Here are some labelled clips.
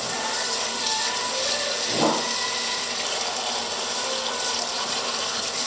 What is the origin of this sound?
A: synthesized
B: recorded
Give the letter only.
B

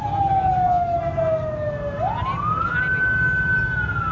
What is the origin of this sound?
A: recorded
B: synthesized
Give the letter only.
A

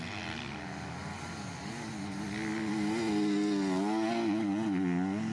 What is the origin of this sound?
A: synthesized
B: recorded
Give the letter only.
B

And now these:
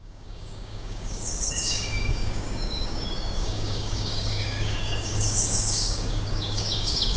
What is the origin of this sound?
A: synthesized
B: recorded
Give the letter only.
A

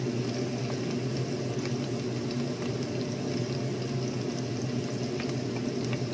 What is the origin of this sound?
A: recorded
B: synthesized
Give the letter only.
A